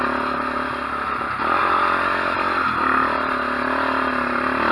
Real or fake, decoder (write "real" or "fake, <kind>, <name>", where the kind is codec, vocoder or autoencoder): real